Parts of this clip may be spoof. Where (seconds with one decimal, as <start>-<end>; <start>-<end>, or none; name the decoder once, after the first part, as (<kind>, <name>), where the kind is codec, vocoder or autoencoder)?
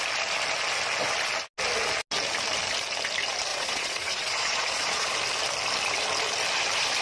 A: 3.5-5.1 (vocoder, Vocos)